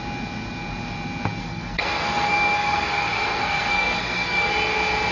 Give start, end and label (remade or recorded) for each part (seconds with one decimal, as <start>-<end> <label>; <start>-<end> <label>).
0.0-1.4 recorded; 1.4-4.5 remade; 4.5-5.1 recorded